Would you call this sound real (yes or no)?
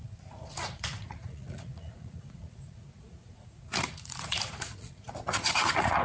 no